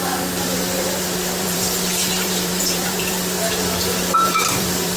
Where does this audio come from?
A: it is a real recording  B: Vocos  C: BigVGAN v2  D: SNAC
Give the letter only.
C